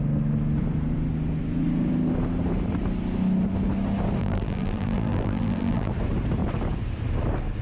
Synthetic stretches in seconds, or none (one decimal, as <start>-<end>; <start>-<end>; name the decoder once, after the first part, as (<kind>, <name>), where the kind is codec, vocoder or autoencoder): 4.2-5.9 (vocoder, BigVGAN v2)